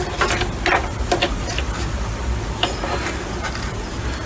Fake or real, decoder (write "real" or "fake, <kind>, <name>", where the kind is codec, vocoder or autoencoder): real